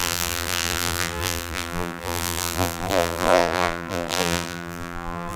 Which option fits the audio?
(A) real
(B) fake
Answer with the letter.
B